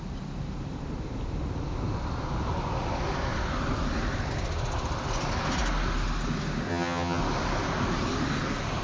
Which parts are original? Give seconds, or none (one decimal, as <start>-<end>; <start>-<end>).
0.0-6.7; 7.2-8.8